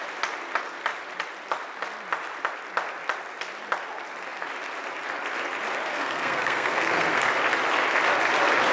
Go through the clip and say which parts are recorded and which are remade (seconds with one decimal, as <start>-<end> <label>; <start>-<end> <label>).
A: 0.0-5.9 recorded; 5.9-7.2 remade; 7.2-8.7 recorded